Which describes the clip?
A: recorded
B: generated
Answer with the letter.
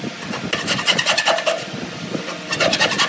A